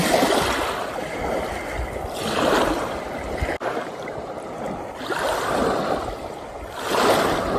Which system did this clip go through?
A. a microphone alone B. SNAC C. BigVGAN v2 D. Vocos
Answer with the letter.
A